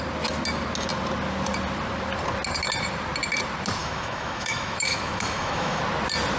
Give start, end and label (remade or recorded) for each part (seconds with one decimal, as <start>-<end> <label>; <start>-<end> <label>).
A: 0.0-3.8 recorded; 3.8-5.8 remade; 5.8-6.4 recorded